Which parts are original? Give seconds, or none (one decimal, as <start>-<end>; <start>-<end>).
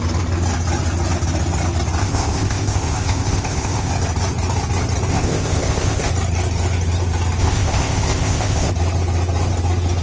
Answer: 0.0-2.0; 3.9-5.1; 6.1-7.4; 8.7-10.0